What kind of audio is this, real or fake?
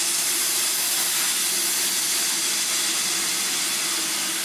real